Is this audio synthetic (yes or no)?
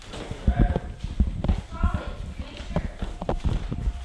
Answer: no